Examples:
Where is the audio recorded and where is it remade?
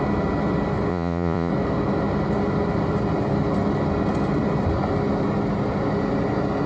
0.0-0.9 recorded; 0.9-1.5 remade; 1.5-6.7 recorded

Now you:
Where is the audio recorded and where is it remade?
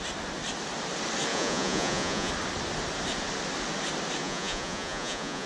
0.0-1.3 recorded; 1.3-2.3 remade; 2.3-4.2 recorded; 4.2-5.5 remade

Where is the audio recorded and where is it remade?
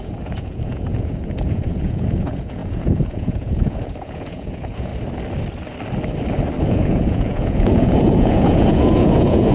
0.0-4.9 remade; 4.9-6.6 recorded; 6.6-9.5 remade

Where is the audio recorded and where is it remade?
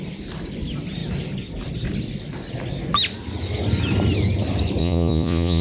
0.0-4.8 recorded; 4.8-5.6 remade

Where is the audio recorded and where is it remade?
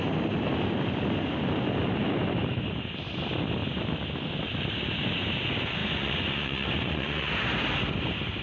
0.0-5.8 recorded; 5.8-7.3 remade; 7.3-8.4 recorded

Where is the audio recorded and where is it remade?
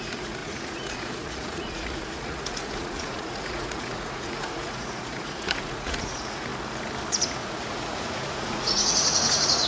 0.0-6.5 remade; 6.5-7.1 recorded; 7.1-9.7 remade